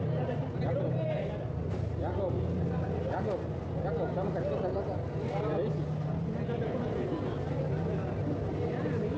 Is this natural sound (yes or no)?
yes